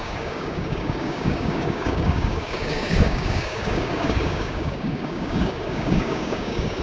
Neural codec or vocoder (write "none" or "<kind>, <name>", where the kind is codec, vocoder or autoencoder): codec, DAC